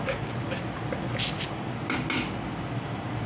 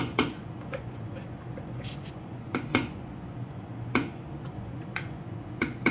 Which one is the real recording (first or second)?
first